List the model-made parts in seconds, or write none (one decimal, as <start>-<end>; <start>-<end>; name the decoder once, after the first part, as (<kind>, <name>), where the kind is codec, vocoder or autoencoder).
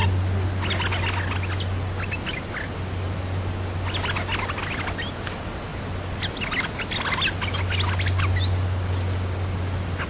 none